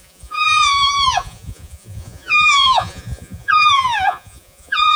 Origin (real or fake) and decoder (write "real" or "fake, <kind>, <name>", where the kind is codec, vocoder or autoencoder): fake, vocoder, Vocos